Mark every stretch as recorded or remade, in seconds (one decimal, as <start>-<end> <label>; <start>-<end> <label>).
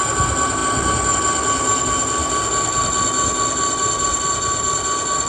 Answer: 0.0-5.3 recorded